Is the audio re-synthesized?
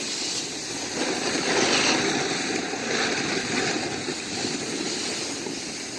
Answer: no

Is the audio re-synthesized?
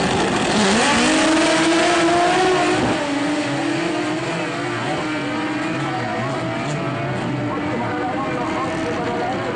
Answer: no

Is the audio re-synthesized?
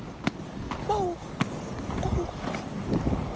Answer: no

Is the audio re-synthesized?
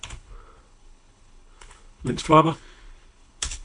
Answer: yes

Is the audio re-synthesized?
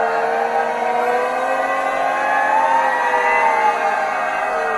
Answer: no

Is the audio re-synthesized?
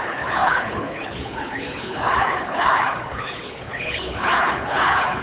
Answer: yes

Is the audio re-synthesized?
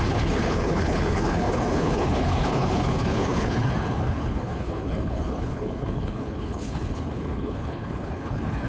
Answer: yes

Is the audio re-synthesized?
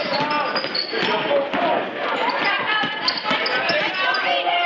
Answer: no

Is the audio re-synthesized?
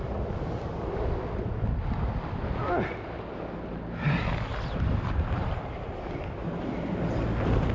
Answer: no